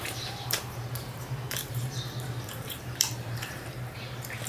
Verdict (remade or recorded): remade